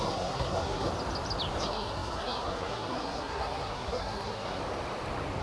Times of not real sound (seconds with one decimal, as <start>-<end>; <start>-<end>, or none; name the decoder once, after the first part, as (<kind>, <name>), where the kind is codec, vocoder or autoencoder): 0.0-0.9 (codec, SNAC); 1.6-4.6